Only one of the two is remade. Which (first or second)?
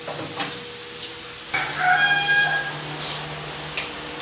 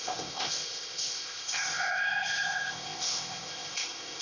second